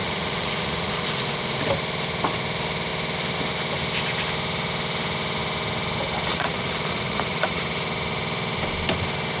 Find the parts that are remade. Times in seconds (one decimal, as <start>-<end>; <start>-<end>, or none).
0.0-1.6; 6.3-7.6